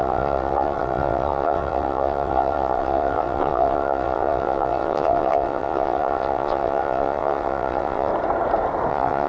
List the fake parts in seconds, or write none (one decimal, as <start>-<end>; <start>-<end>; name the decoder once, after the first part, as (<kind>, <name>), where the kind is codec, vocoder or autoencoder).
0.0-8.1 (vocoder, WaveNeXt); 8.9-9.3